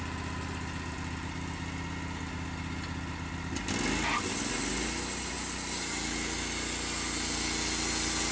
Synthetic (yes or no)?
no